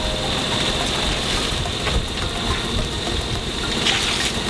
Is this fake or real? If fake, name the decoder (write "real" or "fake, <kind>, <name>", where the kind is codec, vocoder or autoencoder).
real